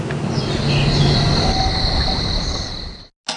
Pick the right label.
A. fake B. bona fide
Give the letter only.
B